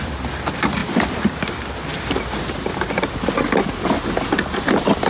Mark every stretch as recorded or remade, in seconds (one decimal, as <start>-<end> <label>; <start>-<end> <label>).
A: 0.0-5.1 recorded